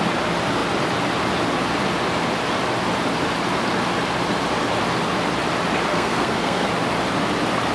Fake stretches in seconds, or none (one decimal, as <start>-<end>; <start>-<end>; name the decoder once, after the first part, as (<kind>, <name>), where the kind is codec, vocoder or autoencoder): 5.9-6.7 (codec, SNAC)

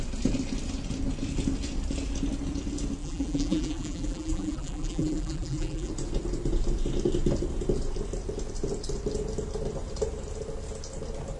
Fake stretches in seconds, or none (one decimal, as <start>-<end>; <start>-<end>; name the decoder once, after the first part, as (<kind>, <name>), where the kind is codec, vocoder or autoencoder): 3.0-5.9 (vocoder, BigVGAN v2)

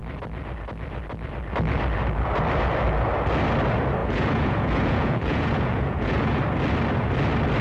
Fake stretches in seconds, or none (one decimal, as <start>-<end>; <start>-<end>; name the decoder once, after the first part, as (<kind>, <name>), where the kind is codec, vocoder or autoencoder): 4.0-6.4 (vocoder, Vocos)

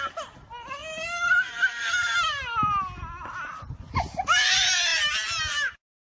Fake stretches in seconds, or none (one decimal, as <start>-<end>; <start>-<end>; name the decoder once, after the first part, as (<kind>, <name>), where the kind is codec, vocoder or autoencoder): none